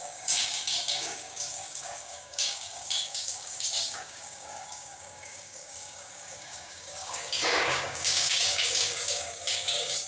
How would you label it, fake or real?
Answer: fake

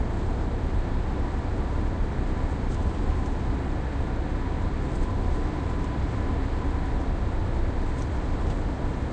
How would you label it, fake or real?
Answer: real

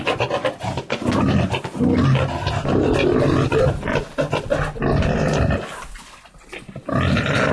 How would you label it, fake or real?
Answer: real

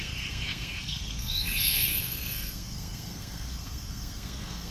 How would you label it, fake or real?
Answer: fake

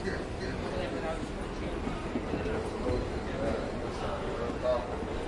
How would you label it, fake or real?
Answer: real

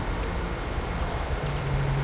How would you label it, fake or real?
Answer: real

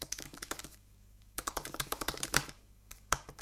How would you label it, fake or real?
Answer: fake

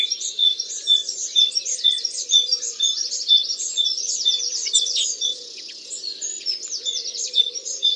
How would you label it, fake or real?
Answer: fake